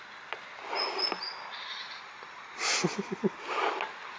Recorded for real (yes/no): yes